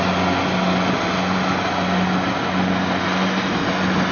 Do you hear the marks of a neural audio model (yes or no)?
no